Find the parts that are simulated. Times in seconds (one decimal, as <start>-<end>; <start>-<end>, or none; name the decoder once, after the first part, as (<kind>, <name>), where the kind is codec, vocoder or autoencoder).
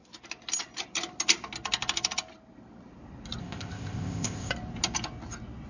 3.4-4.5 (codec, ZipCodec)